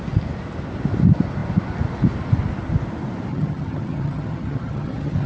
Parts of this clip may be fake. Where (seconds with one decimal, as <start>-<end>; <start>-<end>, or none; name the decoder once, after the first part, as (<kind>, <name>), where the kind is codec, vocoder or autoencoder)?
3.3-5.3 (vocoder, HiFi-GAN)